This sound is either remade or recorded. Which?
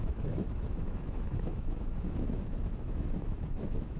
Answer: remade